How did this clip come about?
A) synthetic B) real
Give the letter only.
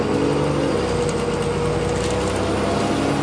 B